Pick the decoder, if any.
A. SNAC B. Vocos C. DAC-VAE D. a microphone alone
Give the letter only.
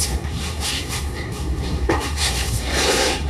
A